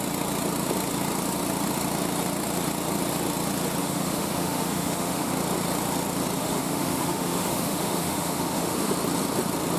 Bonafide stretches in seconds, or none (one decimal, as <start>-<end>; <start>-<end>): 0.0-3.8; 5.3-6.4; 8.9-9.8